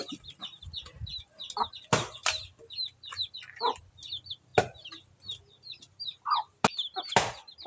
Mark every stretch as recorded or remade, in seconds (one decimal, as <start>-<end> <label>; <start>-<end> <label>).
0.0-7.7 recorded